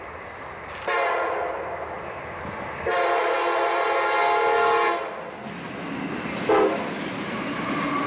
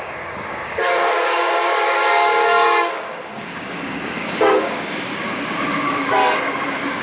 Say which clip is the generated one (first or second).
second